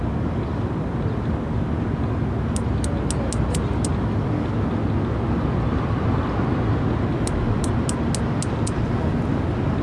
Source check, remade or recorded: recorded